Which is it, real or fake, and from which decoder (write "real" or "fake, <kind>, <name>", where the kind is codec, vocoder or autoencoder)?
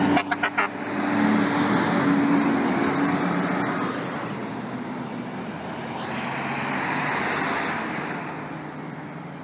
real